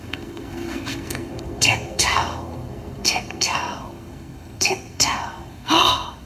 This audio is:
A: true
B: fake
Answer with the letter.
B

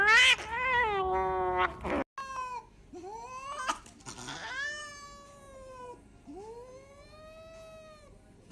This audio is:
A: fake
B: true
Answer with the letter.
B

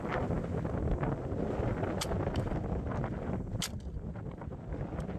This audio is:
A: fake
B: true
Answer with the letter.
B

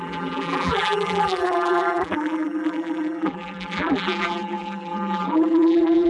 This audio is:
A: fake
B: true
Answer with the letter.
A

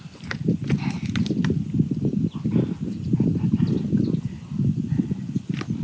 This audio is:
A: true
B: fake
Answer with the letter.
A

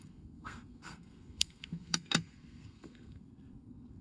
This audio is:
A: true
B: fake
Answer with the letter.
B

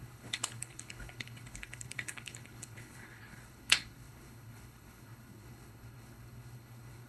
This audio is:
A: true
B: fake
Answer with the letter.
B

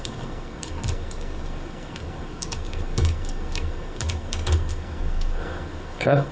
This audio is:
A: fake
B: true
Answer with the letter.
A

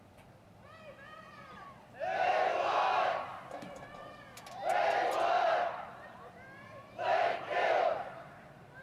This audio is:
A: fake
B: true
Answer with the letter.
A